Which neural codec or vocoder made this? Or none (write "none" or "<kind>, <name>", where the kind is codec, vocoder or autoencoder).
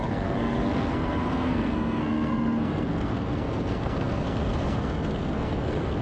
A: codec, SNAC